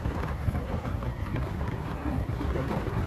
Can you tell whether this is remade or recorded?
remade